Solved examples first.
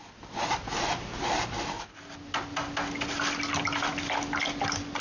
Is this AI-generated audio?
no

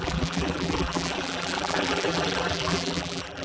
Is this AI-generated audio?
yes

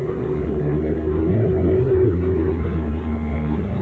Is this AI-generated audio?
yes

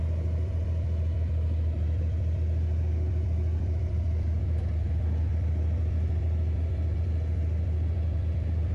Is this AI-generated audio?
yes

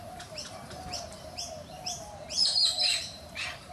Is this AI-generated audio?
yes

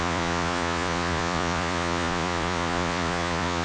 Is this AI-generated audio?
yes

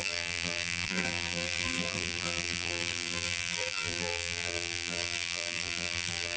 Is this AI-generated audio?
yes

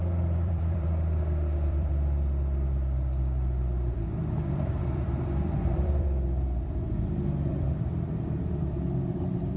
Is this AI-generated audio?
yes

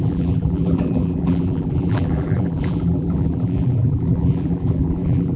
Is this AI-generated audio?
yes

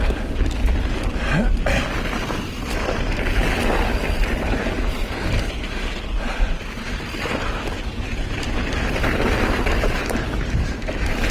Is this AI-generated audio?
no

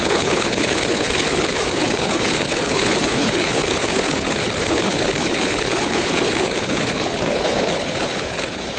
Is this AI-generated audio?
yes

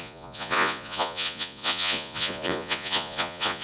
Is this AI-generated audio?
yes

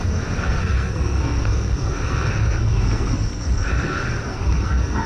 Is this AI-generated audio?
yes